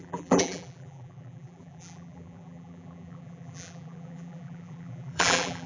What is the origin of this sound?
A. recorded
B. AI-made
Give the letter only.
B